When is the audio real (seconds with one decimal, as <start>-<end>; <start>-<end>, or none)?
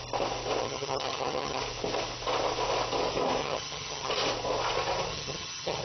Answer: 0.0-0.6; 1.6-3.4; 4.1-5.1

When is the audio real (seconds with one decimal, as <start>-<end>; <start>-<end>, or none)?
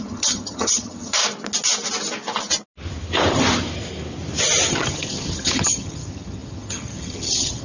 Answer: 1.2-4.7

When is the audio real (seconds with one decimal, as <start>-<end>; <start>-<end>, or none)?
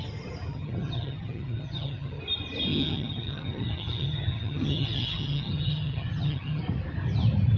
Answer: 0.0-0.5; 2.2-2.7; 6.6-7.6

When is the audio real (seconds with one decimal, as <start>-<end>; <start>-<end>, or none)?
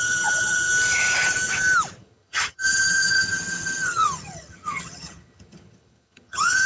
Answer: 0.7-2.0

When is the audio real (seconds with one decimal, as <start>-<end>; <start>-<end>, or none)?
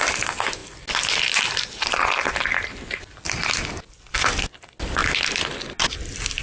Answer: 0.0-6.4